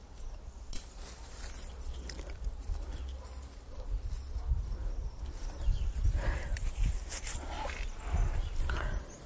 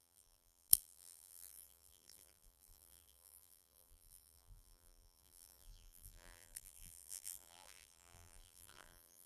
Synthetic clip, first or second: second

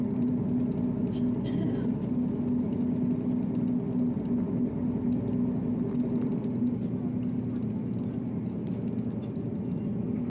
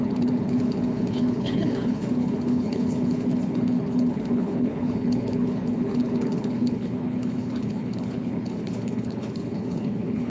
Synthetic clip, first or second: second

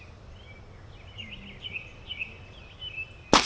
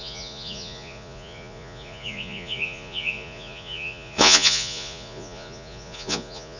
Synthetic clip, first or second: second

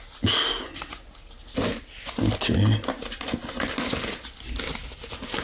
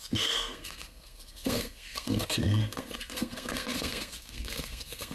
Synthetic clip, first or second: second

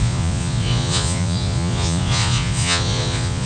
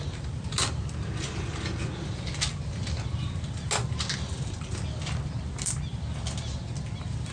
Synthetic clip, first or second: first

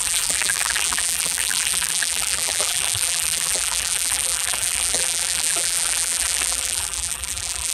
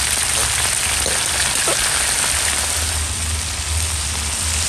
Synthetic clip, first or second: first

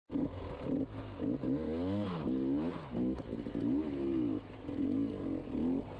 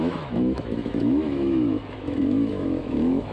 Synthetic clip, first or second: second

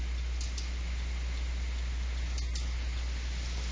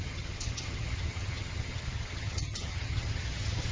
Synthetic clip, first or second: second